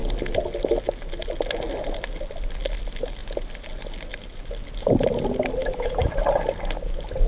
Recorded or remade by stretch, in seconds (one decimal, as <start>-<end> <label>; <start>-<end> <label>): 0.0-5.6 recorded; 5.6-6.1 remade; 6.1-7.3 recorded